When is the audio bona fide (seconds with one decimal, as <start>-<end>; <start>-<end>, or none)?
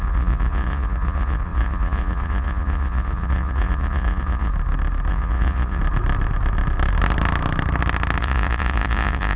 4.5-5.1; 5.8-8.2